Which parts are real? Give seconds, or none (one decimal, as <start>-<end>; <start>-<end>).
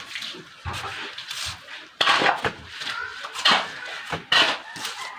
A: 0.0-5.2